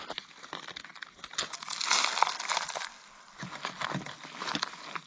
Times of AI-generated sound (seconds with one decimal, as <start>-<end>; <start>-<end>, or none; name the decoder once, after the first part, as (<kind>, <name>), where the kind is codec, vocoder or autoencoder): none